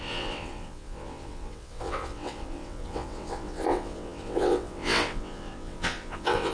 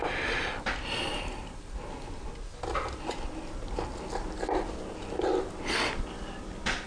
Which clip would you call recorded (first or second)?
second